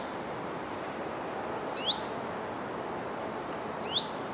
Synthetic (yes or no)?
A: no